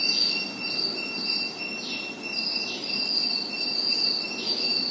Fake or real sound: real